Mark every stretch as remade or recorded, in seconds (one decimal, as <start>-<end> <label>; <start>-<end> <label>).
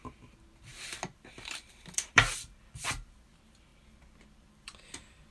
0.0-0.7 recorded; 0.7-3.2 remade; 3.2-3.7 recorded; 3.7-5.3 remade